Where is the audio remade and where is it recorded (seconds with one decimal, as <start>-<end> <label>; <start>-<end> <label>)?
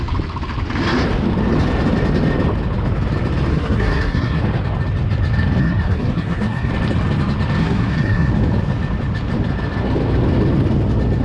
0.0-3.5 recorded; 3.5-4.4 remade; 4.4-5.6 recorded; 5.6-6.7 remade; 6.7-7.6 recorded; 7.6-8.3 remade; 8.3-11.2 recorded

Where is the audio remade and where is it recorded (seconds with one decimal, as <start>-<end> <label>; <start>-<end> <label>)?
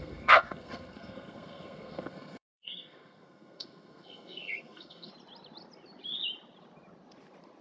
0.0-5.1 remade; 5.1-7.6 recorded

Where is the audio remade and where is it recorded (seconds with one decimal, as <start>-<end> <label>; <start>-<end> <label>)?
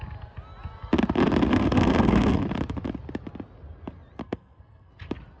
0.0-1.5 recorded; 1.5-2.4 remade; 2.4-4.2 recorded; 4.2-4.9 remade; 4.9-5.4 recorded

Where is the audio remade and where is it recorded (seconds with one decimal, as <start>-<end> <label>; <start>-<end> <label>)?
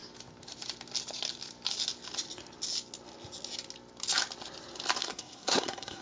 0.0-5.0 recorded; 5.0-6.0 remade